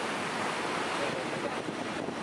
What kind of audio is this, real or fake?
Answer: real